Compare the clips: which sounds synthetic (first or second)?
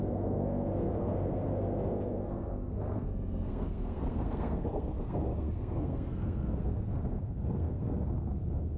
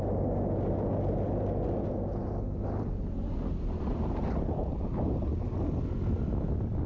first